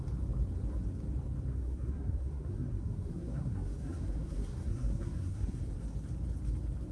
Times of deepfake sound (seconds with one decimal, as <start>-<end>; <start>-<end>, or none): 1.5-5.6